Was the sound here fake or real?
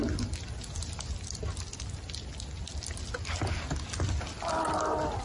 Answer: real